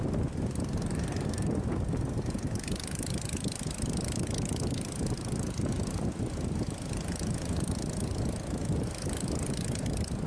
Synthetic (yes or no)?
no